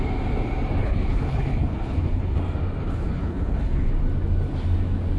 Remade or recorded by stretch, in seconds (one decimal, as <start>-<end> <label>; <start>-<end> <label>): 0.0-0.8 recorded; 0.8-2.4 remade; 2.4-2.8 recorded; 2.8-3.9 remade; 3.9-5.2 recorded

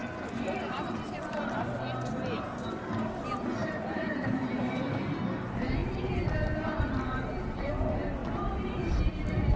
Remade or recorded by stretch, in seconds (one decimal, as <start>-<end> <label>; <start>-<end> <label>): 0.0-1.4 remade; 1.4-3.6 recorded; 3.6-5.2 remade; 5.2-9.6 recorded

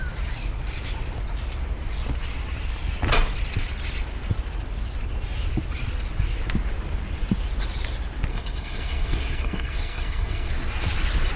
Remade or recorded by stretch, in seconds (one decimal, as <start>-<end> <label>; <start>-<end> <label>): 0.0-8.3 recorded; 8.3-10.5 remade; 10.5-11.4 recorded